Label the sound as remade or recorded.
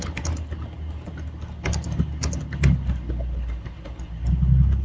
recorded